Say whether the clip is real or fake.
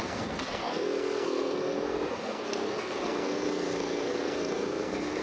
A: fake